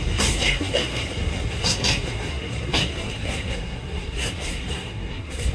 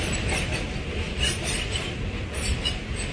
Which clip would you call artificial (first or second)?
first